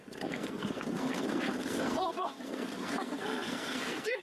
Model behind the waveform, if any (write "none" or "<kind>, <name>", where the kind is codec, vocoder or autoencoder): codec, SNAC